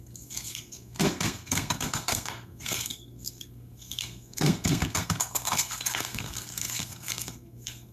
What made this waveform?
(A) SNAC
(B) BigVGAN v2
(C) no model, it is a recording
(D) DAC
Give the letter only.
A